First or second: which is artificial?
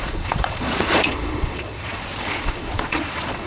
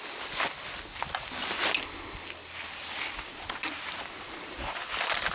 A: first